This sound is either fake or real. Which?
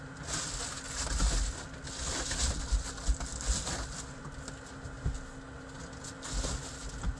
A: real